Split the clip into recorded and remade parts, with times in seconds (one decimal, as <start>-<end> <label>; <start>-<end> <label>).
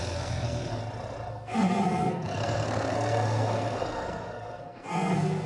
0.0-0.8 remade; 0.8-1.3 recorded; 1.3-5.5 remade